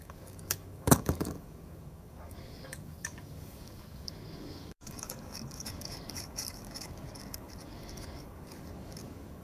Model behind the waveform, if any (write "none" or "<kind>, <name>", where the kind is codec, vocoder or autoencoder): codec, DAC